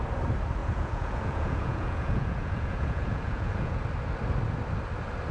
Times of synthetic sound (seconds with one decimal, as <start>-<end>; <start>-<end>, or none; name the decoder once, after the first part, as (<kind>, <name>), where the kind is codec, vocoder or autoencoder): 0.6-3.8 (vocoder, Vocos)